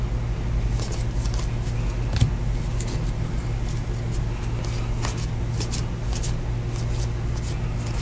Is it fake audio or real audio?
real